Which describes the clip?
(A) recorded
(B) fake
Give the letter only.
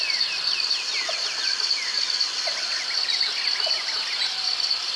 A